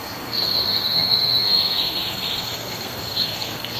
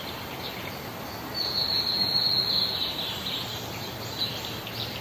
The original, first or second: second